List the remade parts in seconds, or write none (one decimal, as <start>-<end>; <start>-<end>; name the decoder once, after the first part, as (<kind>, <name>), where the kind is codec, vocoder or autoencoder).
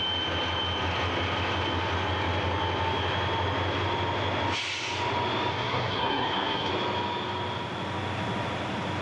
5.5-6.7 (codec, SNAC)